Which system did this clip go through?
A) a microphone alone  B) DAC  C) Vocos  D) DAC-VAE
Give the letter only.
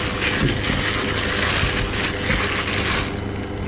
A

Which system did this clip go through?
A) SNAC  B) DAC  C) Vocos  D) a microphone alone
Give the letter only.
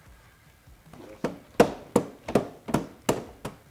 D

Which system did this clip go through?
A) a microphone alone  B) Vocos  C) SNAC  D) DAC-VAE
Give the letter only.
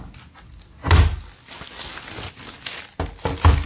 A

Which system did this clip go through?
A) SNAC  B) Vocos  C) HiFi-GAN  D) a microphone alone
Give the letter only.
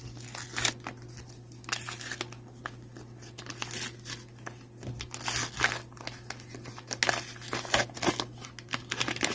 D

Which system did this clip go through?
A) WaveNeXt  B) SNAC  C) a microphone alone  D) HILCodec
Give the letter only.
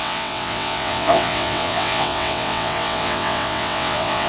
A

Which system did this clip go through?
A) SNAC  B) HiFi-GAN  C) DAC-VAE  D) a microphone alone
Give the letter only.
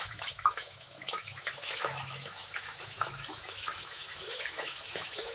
C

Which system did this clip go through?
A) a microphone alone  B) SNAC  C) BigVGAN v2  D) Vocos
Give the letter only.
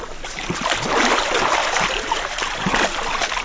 A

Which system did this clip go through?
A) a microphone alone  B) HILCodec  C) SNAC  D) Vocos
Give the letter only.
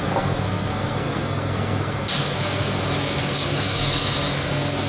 C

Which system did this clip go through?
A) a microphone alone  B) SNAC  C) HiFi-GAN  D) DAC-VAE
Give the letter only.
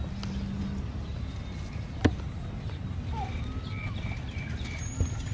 A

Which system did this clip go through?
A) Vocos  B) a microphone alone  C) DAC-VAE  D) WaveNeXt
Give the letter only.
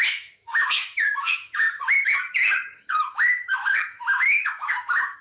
C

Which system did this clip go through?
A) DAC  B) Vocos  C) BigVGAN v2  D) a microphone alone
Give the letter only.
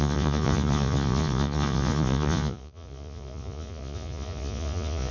B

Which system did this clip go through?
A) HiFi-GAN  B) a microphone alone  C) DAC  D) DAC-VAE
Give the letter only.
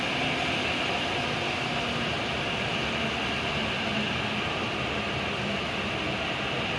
B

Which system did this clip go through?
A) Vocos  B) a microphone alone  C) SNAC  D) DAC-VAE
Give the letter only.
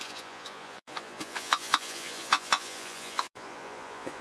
A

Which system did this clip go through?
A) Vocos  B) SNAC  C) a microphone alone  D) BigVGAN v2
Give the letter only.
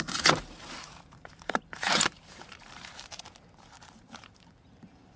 D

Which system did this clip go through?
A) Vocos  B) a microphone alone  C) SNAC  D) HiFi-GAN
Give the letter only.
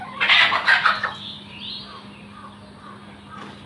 B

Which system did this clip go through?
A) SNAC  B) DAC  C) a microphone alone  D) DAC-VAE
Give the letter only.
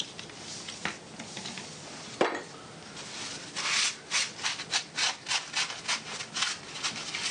C